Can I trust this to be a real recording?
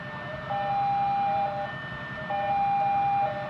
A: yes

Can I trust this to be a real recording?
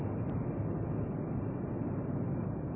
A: yes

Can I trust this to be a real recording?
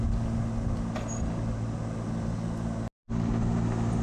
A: yes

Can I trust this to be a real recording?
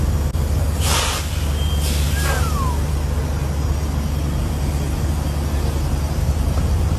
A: yes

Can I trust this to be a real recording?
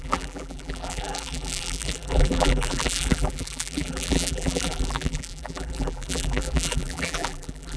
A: no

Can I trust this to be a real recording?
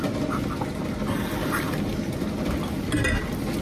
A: yes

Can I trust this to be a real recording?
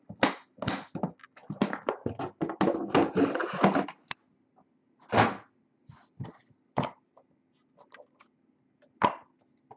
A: yes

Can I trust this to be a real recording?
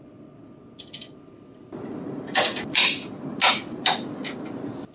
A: yes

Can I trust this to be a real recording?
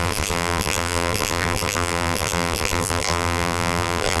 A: no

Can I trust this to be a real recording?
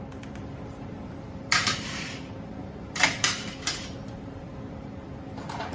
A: no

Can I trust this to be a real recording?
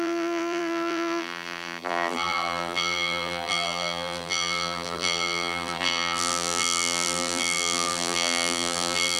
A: no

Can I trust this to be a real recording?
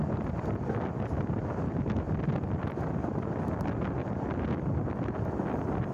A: yes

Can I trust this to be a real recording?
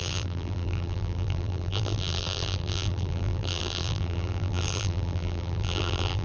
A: no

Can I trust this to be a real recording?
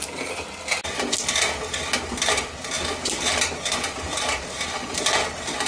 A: yes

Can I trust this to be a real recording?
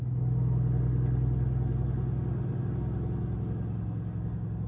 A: yes